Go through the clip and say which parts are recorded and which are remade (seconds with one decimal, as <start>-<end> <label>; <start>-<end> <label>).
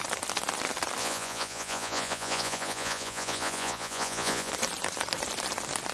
0.0-1.0 recorded; 1.0-4.5 remade; 4.5-5.9 recorded